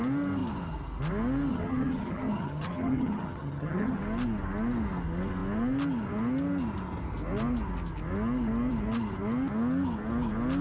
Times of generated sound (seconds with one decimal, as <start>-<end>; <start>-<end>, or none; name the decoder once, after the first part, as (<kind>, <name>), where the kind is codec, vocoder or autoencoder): 1.5-4.0 (vocoder, HiFi-GAN)